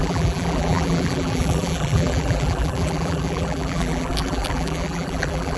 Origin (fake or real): fake